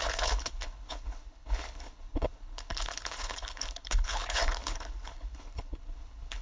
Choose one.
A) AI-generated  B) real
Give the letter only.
A